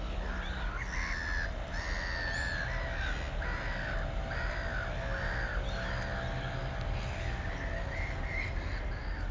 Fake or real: real